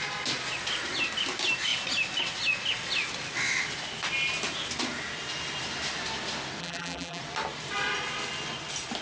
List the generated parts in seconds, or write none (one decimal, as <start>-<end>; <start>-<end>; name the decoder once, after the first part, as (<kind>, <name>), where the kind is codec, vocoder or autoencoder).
6.6-7.2 (vocoder, BigVGAN v2)